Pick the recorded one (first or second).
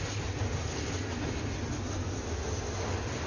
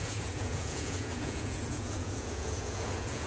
first